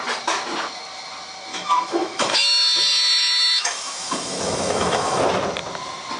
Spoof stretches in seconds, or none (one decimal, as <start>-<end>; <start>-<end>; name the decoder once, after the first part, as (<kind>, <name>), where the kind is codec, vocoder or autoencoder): 1.5-5.2 (autoencoder, DAC-VAE)